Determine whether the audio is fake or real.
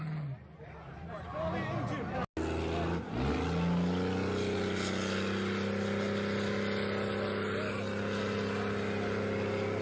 real